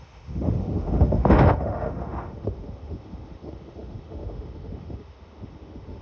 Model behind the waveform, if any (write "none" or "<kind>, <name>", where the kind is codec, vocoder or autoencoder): autoencoder, DAC-VAE